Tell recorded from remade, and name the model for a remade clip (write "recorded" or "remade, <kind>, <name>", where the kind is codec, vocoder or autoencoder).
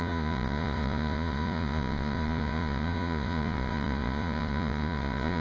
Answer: remade, vocoder, Vocos